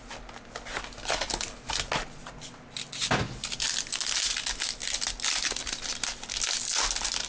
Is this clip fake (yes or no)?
no